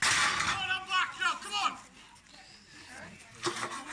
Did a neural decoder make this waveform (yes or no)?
no